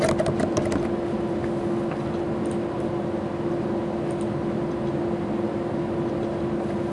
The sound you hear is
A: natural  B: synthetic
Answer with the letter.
A